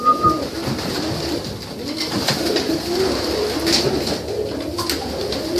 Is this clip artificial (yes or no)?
no